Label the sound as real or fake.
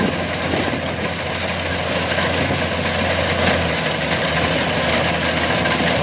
real